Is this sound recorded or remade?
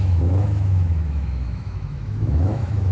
remade